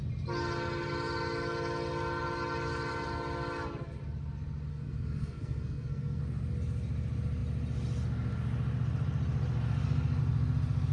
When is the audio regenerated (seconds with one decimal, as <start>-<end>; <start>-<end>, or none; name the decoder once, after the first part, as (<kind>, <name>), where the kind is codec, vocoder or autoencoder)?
4.7-6.2 (codec, SNAC)